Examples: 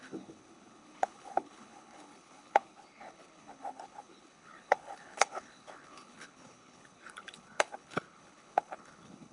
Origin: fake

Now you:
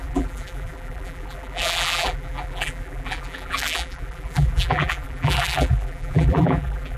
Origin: fake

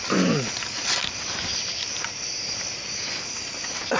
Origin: fake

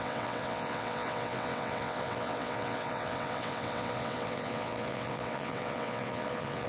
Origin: fake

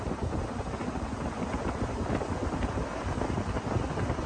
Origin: real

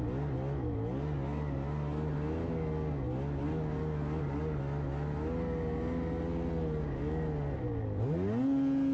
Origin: real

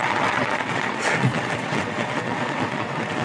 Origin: fake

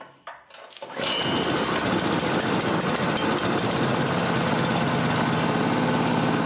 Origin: real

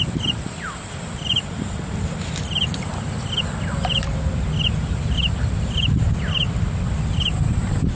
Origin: fake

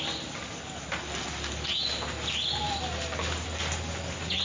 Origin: real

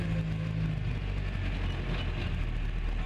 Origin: real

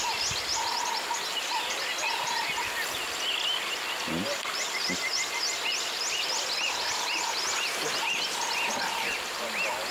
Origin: real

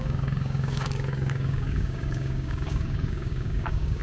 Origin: fake